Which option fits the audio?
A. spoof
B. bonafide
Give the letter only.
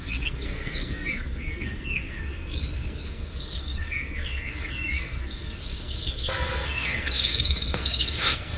A